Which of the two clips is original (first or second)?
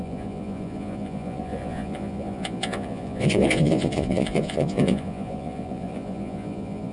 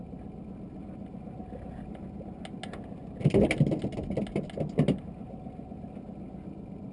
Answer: second